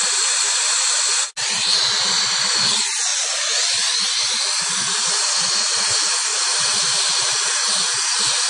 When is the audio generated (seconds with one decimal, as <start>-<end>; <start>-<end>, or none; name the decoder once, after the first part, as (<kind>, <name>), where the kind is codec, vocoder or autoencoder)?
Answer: 4.9-5.8 (vocoder, BigVGAN v2); 6.3-8.5